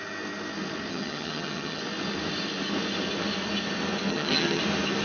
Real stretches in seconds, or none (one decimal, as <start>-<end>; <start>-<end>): 0.0-0.9; 1.8-4.1; 4.6-5.0